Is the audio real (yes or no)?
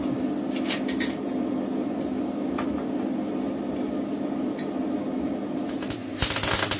yes